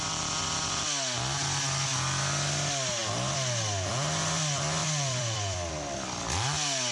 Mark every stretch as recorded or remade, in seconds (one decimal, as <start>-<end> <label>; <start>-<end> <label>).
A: 0.0-4.8 recorded; 4.8-5.7 remade; 5.7-6.9 recorded